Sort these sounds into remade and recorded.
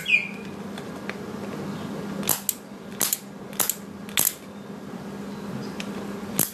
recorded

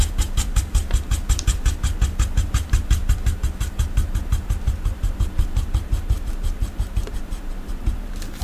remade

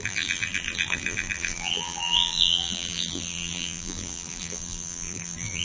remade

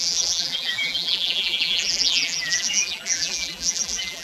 remade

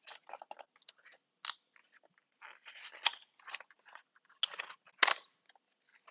recorded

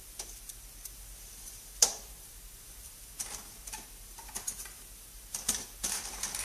remade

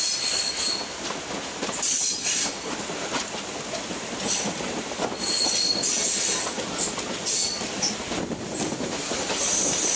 recorded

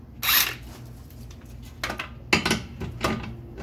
recorded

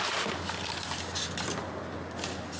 recorded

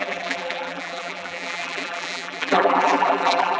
remade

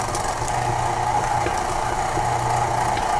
recorded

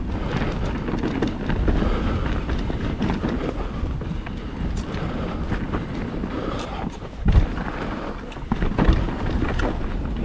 recorded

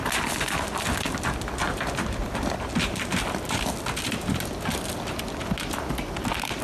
recorded